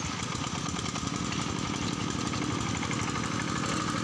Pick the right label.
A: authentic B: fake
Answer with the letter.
A